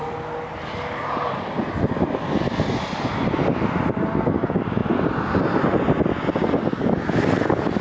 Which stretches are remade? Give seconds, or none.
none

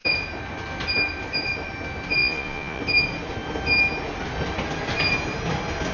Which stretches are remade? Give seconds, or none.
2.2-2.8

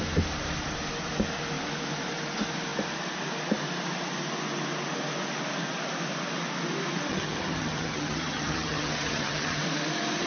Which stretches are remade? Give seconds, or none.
7.1-9.6

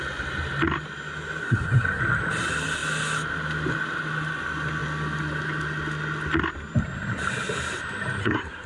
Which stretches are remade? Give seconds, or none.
1.4-2.0; 8.2-8.7

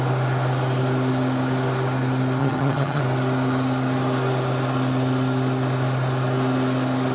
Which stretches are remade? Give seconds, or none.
2.4-3.0

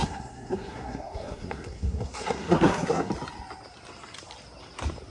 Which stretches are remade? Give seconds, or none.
0.0-3.1

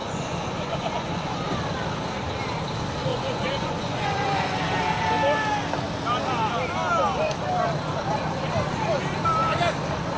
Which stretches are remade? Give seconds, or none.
0.0-1.4; 3.1-4.6